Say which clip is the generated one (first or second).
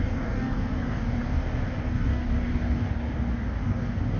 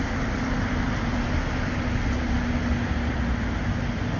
first